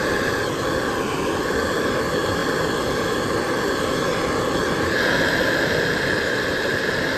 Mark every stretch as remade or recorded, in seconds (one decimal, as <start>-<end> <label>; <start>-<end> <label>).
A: 0.0-7.2 recorded